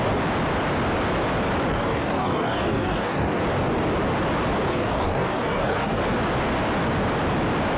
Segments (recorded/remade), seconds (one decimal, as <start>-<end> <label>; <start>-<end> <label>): 0.0-1.7 recorded; 1.7-3.4 remade; 3.4-4.7 recorded; 4.7-6.0 remade; 6.0-7.8 recorded